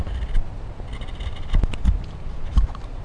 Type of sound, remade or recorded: recorded